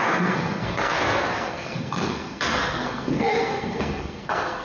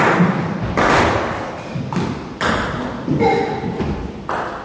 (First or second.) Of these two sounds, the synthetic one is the first